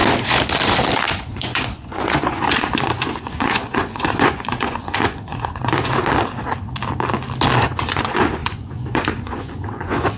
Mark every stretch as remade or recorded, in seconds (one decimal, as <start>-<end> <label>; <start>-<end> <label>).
0.0-1.2 recorded; 1.2-6.0 remade; 6.0-7.6 recorded; 7.6-10.2 remade

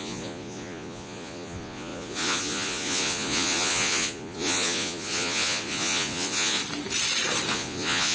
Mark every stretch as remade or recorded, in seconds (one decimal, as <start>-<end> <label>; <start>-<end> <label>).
0.0-6.6 remade; 6.6-7.5 recorded; 7.5-8.1 remade

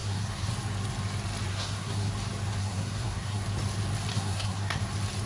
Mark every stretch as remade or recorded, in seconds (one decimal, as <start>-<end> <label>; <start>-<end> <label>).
0.0-0.5 remade; 0.5-1.5 recorded; 1.5-2.1 remade; 2.1-2.6 recorded; 2.6-3.4 remade; 3.4-4.1 recorded; 4.1-4.8 remade; 4.8-5.3 recorded

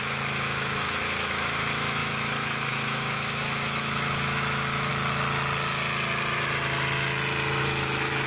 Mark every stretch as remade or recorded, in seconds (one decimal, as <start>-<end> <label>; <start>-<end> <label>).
0.0-4.9 remade; 4.9-7.6 recorded; 7.6-8.3 remade

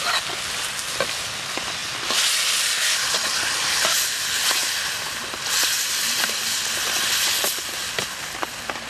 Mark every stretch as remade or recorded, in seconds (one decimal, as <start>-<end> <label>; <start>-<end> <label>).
0.0-8.9 recorded